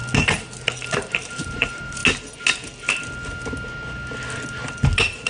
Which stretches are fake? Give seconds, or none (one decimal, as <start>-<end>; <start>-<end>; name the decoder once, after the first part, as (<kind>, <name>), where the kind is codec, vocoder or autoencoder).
1.1-2.0 (vocoder, BigVGAN v2)